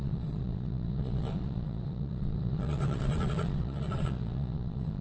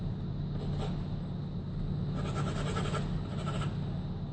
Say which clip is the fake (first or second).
first